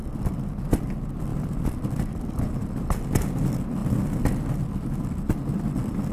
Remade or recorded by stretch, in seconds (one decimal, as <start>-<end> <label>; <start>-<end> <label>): 0.0-6.1 recorded